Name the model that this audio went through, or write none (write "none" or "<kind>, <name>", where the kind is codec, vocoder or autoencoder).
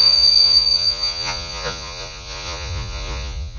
vocoder, Vocos